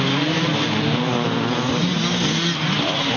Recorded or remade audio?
recorded